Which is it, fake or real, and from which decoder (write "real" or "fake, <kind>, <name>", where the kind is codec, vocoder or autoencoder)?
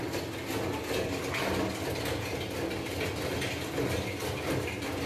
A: real